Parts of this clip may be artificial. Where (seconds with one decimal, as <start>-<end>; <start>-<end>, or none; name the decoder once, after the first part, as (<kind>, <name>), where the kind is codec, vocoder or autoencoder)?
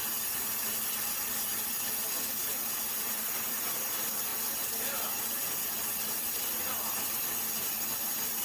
none